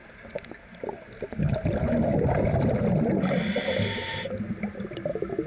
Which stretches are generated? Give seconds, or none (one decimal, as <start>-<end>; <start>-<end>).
none